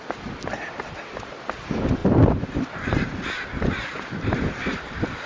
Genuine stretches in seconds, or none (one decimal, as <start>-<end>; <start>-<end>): 0.0-5.3

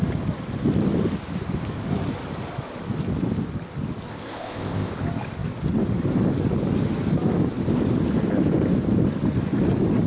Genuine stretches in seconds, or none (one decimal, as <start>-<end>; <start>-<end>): 0.0-4.1; 4.9-10.1

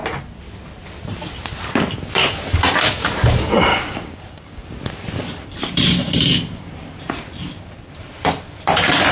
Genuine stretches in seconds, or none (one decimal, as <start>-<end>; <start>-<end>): 0.0-3.7; 4.7-9.1